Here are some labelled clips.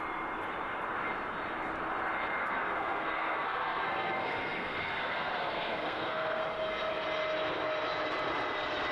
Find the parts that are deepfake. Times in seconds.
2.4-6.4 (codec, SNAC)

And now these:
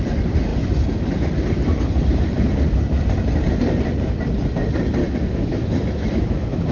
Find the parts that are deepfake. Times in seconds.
5.0-6.7 (autoencoder, DAC-VAE)